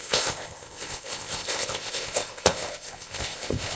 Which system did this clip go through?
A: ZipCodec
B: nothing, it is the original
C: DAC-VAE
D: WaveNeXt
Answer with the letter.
A